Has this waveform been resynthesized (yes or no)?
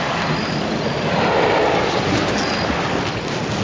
no